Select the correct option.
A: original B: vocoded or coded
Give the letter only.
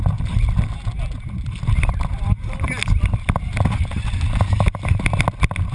A